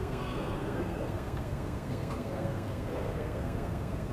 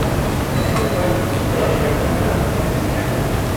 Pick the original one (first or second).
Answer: second